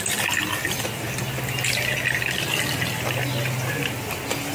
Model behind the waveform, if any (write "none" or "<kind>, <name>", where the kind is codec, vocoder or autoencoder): none